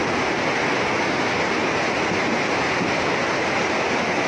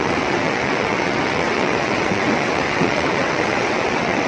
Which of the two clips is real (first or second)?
first